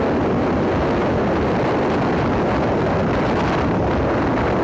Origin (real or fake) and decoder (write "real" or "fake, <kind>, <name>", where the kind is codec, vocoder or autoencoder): real